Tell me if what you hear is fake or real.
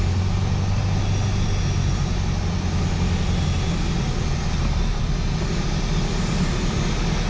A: real